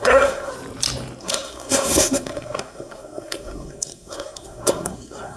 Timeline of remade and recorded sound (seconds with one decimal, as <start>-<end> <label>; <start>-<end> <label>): 0.0-0.5 remade; 0.5-1.2 recorded; 1.2-5.4 remade